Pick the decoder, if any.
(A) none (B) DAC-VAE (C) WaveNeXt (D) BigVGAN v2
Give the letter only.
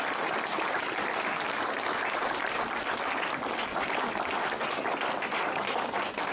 A